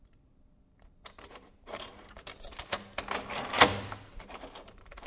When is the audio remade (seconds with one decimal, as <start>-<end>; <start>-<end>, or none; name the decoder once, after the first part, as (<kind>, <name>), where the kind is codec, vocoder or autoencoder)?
0.0-1.9 (vocoder, BigVGAN v2); 4.6-5.1

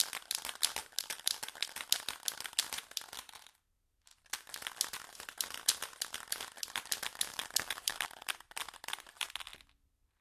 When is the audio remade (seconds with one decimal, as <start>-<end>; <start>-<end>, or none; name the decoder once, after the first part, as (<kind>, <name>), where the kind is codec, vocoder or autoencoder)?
0.8-1.5 (vocoder, BigVGAN v2); 7.3-8.3

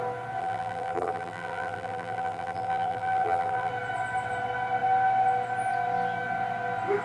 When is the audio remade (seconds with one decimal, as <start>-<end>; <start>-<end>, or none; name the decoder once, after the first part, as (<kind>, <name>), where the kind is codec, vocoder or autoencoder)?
0.4-3.7 (vocoder, BigVGAN v2)

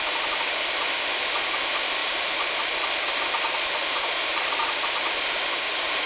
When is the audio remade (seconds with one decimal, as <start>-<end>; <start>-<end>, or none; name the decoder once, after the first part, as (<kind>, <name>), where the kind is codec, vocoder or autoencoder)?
2.0-6.1 (vocoder, BigVGAN v2)